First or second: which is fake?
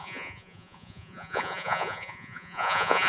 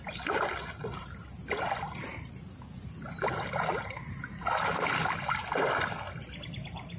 first